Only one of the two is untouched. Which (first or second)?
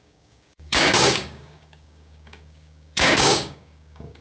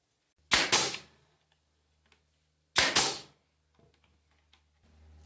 second